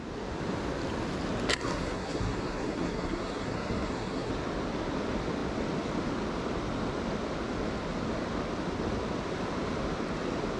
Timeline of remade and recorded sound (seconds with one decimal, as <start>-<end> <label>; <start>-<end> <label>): 0.0-1.5 recorded; 1.5-4.3 remade; 4.3-10.6 recorded